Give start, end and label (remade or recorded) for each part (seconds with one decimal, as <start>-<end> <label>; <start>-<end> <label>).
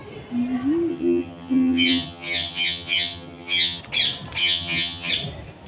0.0-0.9 recorded; 0.9-3.8 remade; 3.8-4.4 recorded; 4.4-5.1 remade; 5.1-5.7 recorded